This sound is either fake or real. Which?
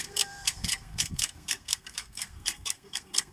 fake